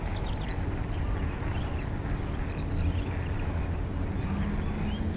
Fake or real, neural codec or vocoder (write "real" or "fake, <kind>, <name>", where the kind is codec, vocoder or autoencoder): real